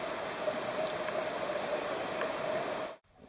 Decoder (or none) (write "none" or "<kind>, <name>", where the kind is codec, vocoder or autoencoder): none